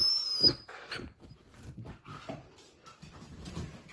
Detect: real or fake real